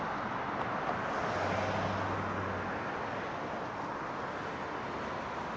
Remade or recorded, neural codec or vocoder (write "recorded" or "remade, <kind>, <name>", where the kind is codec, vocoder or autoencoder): recorded